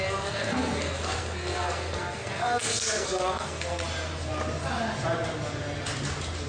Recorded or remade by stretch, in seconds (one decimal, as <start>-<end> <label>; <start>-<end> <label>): 0.0-3.8 remade; 3.8-6.5 recorded

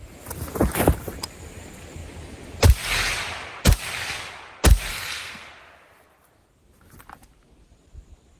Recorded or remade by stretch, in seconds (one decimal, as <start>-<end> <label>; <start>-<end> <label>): 0.0-4.9 recorded; 4.9-5.5 remade; 5.5-8.4 recorded

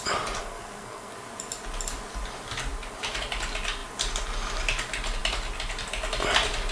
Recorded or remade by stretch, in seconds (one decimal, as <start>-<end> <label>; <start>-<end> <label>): 0.0-0.4 recorded; 0.4-1.1 remade; 1.1-6.7 recorded

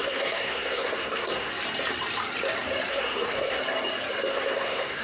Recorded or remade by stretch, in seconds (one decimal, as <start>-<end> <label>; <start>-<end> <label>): 0.0-1.5 remade; 1.5-2.9 recorded; 2.9-3.6 remade; 3.6-4.3 recorded; 4.3-5.0 remade

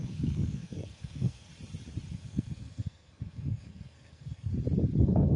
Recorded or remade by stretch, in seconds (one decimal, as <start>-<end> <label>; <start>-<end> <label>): 0.0-1.5 remade; 1.5-2.1 recorded; 2.1-4.5 remade; 4.5-5.0 recorded; 5.0-5.4 remade

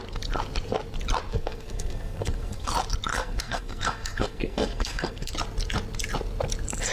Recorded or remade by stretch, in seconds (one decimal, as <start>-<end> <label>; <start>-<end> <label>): 0.0-1.3 recorded; 1.3-2.7 remade; 2.7-3.1 recorded; 3.1-5.3 remade; 5.3-6.9 recorded